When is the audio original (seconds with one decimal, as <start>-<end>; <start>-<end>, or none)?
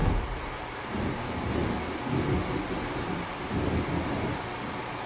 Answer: 0.8-5.1